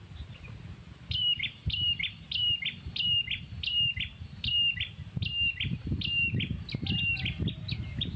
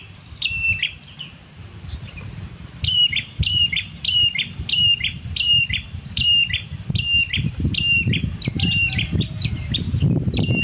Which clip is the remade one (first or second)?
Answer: second